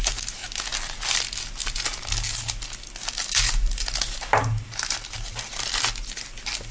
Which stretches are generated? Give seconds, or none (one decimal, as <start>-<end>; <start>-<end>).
none